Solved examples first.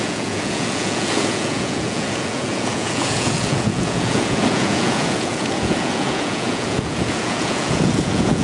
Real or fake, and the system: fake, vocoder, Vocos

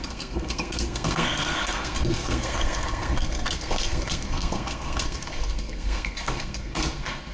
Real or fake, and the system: fake, codec, SNAC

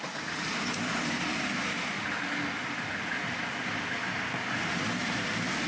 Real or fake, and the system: real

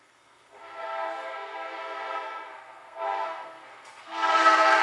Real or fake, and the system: fake, codec, SNAC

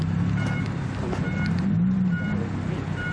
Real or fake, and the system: real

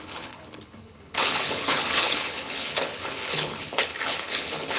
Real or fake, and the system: fake, codec, HILCodec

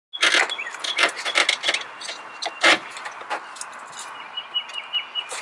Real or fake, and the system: real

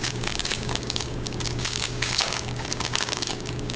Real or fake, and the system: fake, codec, DAC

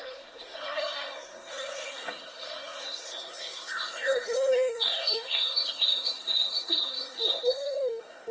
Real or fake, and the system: fake, codec, SNAC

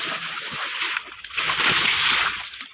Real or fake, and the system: real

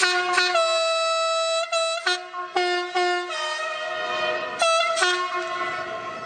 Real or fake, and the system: real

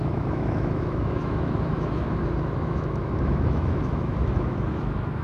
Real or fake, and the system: fake, autoencoder, DAC-VAE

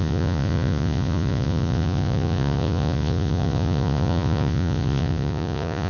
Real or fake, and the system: fake, vocoder, Vocos